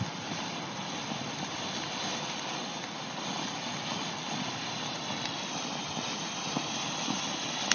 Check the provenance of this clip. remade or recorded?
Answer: remade